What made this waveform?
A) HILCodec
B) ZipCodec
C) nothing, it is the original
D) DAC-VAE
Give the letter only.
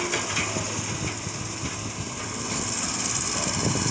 C